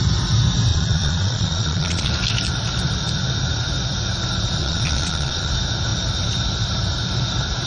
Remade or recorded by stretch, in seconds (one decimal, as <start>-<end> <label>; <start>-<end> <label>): 0.0-0.7 recorded; 0.7-2.1 remade; 2.1-4.6 recorded; 4.6-5.5 remade; 5.5-7.7 recorded